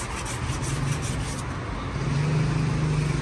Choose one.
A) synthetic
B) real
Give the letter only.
B